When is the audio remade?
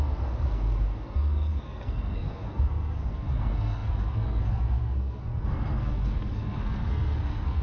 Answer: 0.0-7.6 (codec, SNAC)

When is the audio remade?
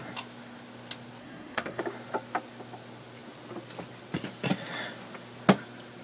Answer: 1.2-1.8 (codec, SNAC)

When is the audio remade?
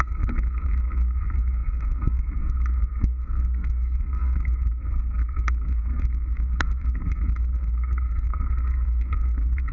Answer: 0.0-9.7 (codec, SNAC)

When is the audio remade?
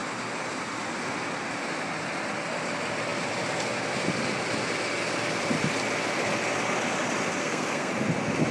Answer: 7.4-7.9 (codec, SNAC)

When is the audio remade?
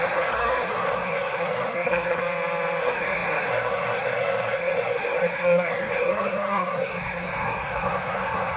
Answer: 0.0-2.2 (codec, SNAC); 2.8-8.6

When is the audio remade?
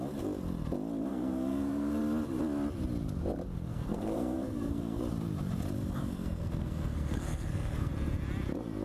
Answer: 1.1-2.0 (codec, SNAC); 3.7-5.0; 6.0-7.9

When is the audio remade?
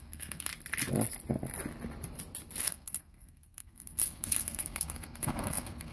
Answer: 0.0-0.5 (codec, SNAC); 2.6-5.9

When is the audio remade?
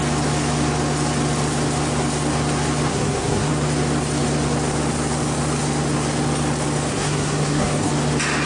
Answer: 2.9-3.5 (codec, SNAC); 6.9-7.9